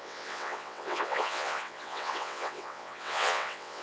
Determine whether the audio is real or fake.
fake